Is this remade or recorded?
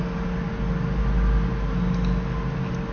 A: recorded